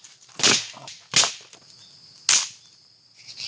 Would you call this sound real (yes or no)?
yes